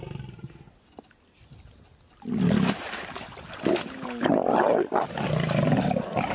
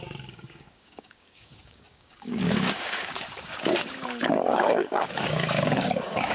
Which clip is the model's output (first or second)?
second